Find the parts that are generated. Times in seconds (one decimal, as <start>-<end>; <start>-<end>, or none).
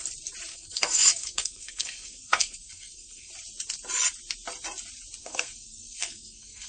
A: 0.5-3.3; 5.2-6.7